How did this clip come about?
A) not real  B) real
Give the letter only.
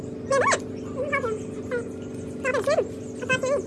B